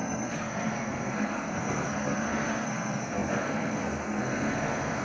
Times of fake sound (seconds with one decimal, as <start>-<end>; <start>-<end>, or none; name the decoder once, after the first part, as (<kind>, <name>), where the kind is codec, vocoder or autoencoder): 0.0-5.0 (codec, SNAC)